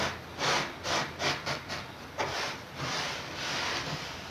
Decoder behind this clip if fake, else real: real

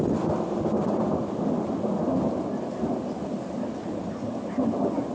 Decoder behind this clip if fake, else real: real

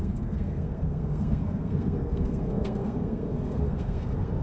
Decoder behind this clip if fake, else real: fake, codec, SNAC